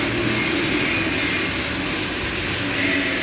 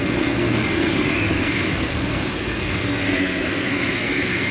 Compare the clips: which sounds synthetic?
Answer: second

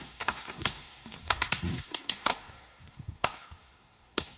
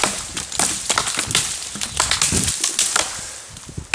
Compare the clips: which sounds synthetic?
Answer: first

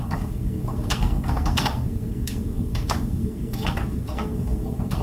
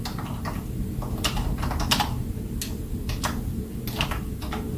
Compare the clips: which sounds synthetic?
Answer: first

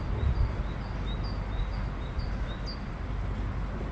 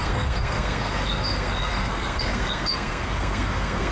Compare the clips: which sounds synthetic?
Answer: second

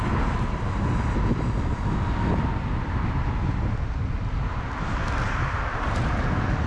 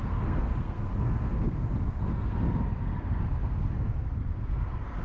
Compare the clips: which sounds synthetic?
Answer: second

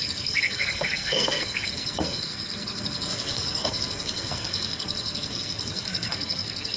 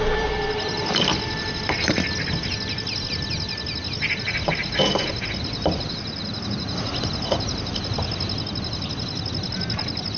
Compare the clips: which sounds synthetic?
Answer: first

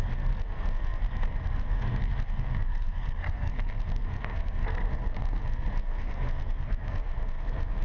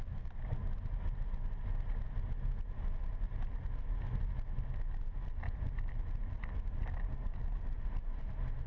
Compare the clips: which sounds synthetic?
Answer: first